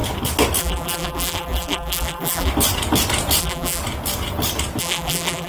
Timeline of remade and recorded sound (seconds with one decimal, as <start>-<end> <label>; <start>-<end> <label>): 0.0-0.6 recorded; 0.6-2.5 remade; 2.5-3.4 recorded; 3.4-3.8 remade; 3.8-4.8 recorded; 4.8-5.5 remade